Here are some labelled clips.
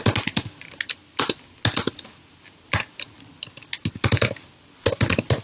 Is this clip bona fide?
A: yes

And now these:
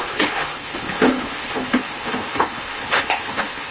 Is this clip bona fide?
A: no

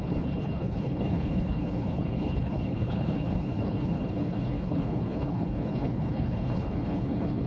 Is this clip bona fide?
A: no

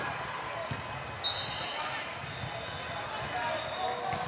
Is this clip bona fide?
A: yes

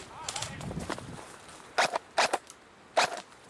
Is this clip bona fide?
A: yes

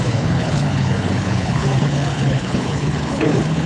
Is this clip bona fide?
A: no